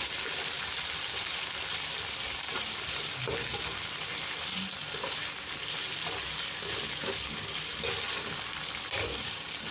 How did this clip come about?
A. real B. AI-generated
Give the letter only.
B